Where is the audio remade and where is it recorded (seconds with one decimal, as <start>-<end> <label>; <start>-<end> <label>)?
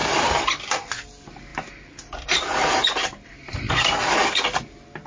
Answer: 0.0-1.5 recorded; 1.5-4.6 remade; 4.6-5.1 recorded